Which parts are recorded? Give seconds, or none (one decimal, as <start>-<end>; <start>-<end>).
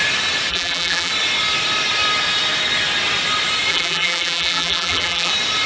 0.0-0.5; 1.1-3.7; 5.3-5.7